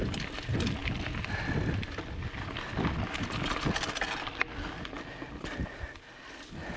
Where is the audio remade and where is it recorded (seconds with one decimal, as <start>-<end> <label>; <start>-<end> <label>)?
0.0-6.8 recorded